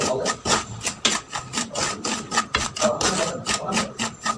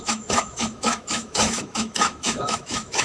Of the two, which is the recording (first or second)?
first